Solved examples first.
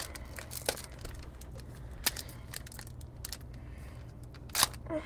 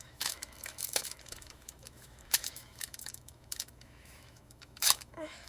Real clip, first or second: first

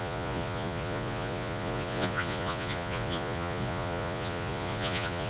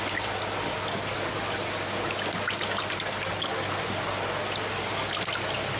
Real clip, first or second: second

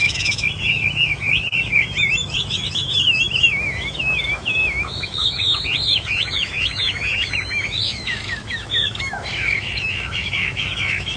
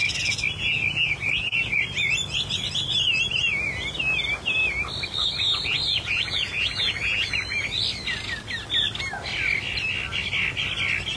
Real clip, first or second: second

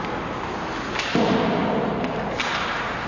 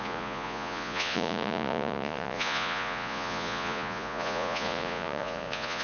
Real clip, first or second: first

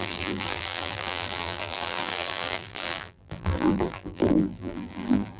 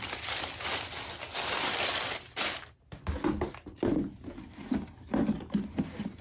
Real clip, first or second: second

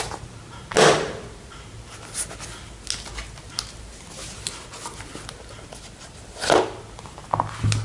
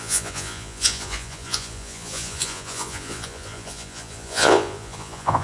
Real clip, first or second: first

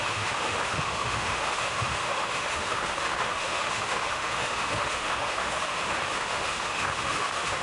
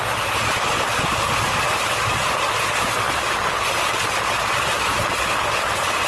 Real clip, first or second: second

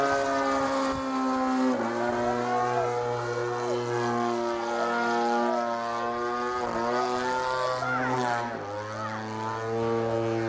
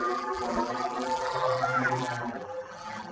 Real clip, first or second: first